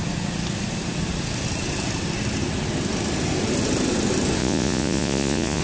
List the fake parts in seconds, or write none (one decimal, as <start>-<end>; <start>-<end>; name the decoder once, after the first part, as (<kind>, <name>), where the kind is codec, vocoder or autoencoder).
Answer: 4.4-5.6 (vocoder, Vocos)